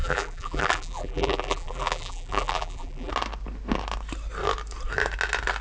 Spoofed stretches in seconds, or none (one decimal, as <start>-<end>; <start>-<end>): 0.0-3.1